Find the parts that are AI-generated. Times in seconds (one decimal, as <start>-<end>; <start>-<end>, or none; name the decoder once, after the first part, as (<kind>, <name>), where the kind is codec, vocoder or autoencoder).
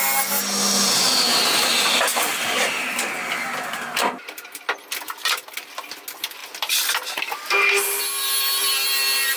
none